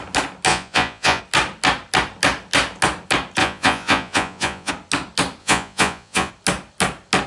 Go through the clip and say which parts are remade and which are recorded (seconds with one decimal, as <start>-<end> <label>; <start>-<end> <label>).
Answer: 0.0-0.5 recorded; 0.5-1.2 remade; 1.2-3.4 recorded; 3.4-4.7 remade; 4.7-5.4 recorded; 5.4-6.3 remade; 6.3-7.3 recorded